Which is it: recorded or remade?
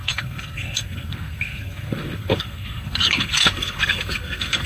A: remade